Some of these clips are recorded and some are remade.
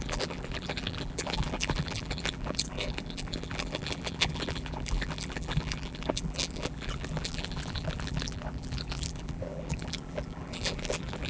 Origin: remade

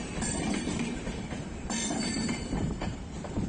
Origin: remade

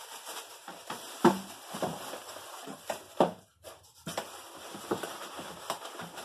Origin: remade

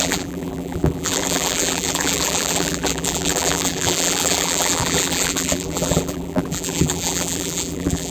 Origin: remade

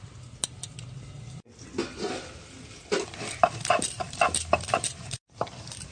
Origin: recorded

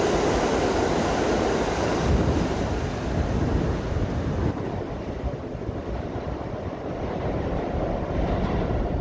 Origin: remade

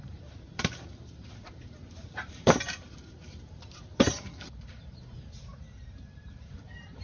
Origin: remade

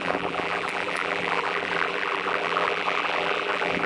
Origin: remade